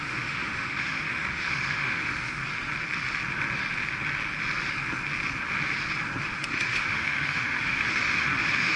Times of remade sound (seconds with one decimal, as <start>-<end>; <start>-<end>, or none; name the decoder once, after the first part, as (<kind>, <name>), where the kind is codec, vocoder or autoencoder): 0.0-2.4 (autoencoder, DAC-VAE); 6.3-8.8